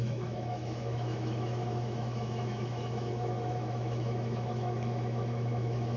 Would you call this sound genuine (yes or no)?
no